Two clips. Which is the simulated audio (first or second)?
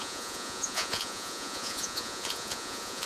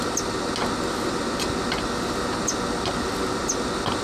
first